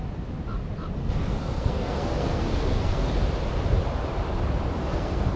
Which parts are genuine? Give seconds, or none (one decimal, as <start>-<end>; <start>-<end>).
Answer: 0.0-1.0; 3.1-4.8